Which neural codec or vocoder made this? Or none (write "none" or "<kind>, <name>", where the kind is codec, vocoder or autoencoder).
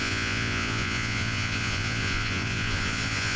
vocoder, Vocos